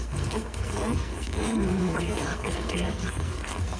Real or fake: fake